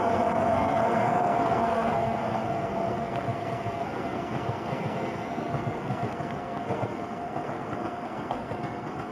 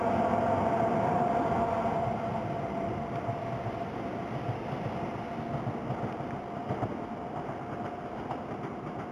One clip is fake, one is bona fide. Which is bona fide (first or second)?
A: second